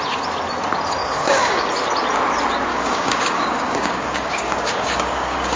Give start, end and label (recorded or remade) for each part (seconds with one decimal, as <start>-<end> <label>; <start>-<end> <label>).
0.0-1.0 recorded; 1.0-1.7 remade; 1.7-2.7 recorded; 2.7-5.6 remade